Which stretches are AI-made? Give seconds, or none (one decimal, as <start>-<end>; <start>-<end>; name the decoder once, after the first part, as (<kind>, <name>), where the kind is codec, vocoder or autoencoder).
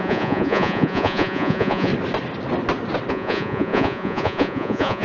0.0-1.9 (vocoder, Vocos); 3.1-5.0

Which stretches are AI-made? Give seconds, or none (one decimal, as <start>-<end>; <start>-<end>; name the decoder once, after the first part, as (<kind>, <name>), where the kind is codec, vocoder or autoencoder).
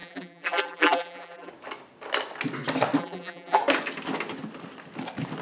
0.0-1.5 (vocoder, BigVGAN v2); 3.0-3.6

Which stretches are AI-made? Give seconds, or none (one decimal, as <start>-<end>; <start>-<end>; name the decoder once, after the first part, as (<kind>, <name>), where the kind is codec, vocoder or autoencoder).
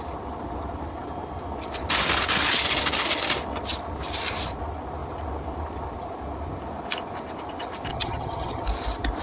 7.9-8.6 (vocoder, HiFi-GAN)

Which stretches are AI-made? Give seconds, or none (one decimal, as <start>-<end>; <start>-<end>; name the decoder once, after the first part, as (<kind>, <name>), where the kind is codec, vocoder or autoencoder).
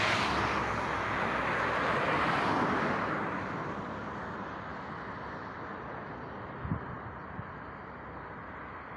none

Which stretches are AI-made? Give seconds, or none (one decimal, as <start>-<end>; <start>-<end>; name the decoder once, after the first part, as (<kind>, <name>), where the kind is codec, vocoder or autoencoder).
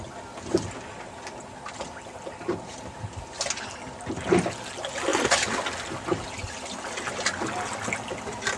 none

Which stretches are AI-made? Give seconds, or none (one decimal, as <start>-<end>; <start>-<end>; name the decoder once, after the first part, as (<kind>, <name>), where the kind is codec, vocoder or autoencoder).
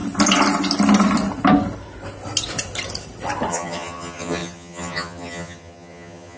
3.5-6.4 (vocoder, HiFi-GAN)